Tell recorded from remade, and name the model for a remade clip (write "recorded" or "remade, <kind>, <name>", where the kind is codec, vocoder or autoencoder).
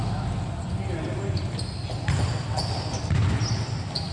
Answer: recorded